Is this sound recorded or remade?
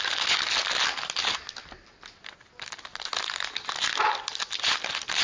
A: recorded